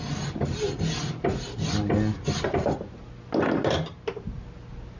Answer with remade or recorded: recorded